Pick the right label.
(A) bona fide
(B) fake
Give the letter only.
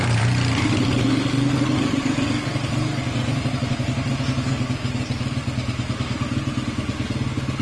A